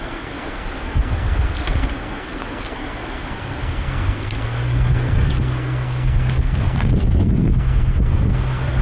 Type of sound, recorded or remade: remade